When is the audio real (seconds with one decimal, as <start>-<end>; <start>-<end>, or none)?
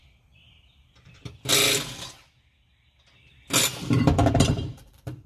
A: 1.5-3.8